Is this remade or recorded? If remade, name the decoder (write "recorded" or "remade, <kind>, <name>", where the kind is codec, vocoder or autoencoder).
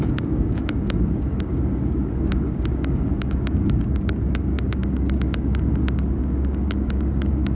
remade, codec, DAC